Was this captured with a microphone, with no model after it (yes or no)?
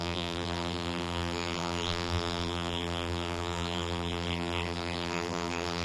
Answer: no